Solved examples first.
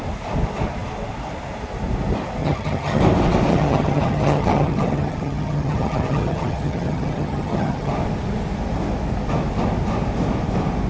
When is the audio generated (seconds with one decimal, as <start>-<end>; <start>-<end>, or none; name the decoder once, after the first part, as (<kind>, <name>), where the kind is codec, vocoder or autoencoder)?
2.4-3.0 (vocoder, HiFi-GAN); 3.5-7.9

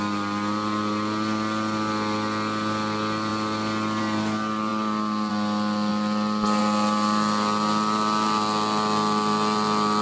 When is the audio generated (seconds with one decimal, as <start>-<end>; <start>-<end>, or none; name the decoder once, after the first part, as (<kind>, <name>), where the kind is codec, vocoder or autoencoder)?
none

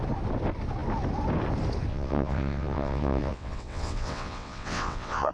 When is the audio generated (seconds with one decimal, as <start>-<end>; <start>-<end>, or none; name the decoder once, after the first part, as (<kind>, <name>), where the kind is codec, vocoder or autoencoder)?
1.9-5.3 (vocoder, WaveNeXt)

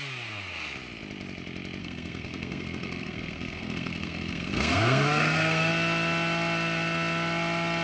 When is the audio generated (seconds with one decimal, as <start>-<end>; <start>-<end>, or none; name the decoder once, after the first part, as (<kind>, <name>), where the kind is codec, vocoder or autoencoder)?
1.8-5.7 (codec, SNAC)

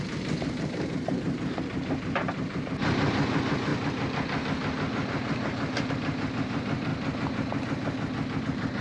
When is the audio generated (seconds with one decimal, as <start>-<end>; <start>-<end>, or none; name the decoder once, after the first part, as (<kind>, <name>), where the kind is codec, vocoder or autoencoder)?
0.0-3.7 (vocoder, BigVGAN v2); 5.9-6.9; 8.4-8.8

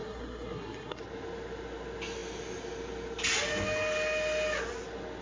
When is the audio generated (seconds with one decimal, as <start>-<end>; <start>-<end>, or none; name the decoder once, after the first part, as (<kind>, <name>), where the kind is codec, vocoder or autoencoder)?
0.0-1.0 (codec, SNAC)